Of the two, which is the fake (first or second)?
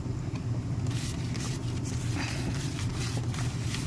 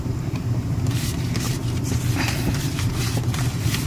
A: second